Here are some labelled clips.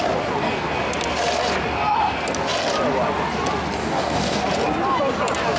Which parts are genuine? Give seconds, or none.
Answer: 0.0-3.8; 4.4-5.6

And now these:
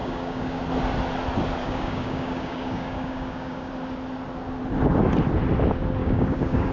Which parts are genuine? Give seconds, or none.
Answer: 0.6-1.6; 3.7-6.0

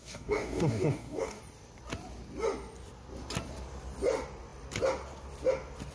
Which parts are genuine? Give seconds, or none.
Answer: 1.4-5.9

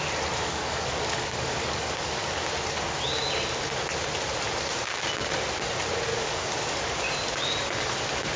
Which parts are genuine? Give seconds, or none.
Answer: 0.0-0.4; 2.5-6.1; 6.8-8.4

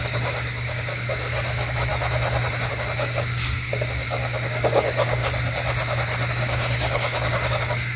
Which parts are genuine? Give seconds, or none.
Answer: 1.9-2.7; 5.2-6.3

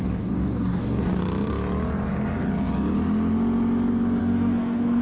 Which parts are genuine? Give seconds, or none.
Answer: 1.2-4.2

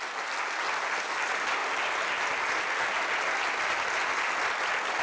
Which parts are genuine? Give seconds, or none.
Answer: 0.0-5.0